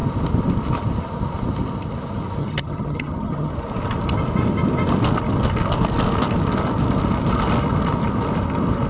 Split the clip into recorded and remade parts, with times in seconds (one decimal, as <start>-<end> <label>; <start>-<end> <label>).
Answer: 0.0-2.4 recorded; 2.4-3.5 remade; 3.5-8.9 recorded